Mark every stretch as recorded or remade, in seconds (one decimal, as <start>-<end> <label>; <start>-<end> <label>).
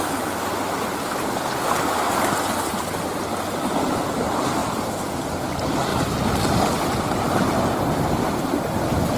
0.0-4.6 recorded; 4.6-5.1 remade; 5.1-9.2 recorded